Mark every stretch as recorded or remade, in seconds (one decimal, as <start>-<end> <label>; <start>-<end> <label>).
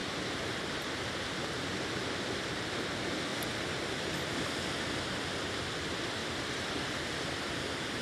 0.0-3.3 recorded; 3.3-4.1 remade; 4.1-6.2 recorded; 6.2-7.0 remade; 7.0-8.0 recorded